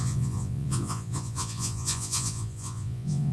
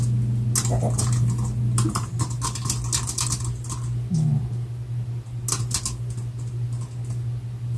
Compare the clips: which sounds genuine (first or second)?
second